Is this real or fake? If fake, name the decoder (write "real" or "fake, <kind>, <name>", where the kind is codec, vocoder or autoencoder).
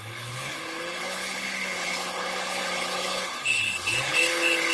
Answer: fake, codec, HILCodec